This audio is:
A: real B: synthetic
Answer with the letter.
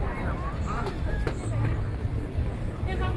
A